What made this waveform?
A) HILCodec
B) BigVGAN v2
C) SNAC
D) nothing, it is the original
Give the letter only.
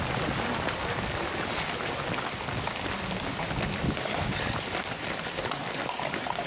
D